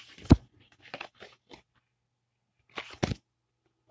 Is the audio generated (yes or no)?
no